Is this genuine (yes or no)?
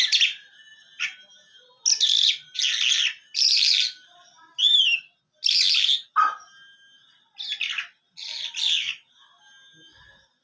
yes